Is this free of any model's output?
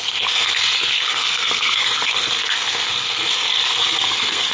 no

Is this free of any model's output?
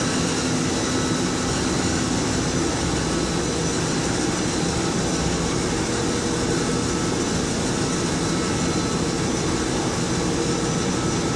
yes